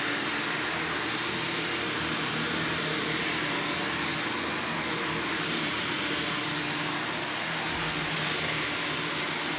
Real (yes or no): yes